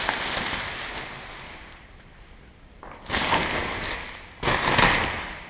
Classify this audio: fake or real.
real